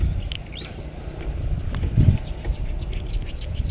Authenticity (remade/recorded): recorded